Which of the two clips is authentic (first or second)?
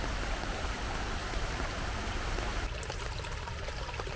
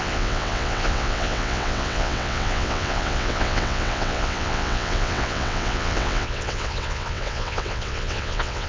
first